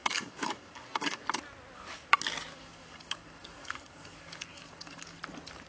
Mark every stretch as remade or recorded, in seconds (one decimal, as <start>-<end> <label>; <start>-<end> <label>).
0.0-1.2 remade; 1.2-2.5 recorded; 2.5-5.2 remade; 5.2-5.7 recorded